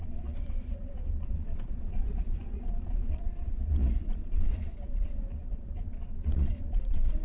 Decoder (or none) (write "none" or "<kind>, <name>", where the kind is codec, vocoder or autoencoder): vocoder, Vocos